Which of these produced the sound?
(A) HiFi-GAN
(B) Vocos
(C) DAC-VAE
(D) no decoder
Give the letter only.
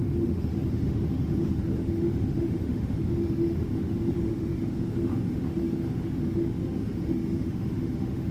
C